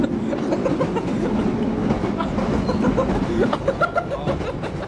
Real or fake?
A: real